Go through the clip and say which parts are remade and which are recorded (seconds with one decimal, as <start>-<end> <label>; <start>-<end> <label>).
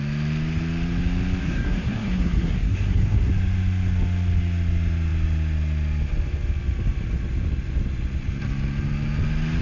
0.0-1.4 recorded; 1.4-3.3 remade; 3.3-9.6 recorded